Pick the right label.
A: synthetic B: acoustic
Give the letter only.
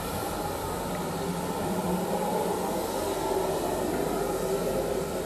B